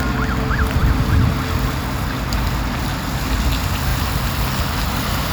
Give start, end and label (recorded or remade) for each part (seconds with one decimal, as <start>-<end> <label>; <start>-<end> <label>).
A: 0.0-5.3 recorded